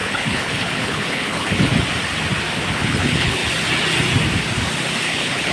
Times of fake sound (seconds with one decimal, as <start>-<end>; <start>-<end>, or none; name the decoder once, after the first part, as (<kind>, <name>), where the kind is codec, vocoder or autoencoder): 0.0-1.7 (codec, HILCodec); 2.7-3.4; 5.0-5.5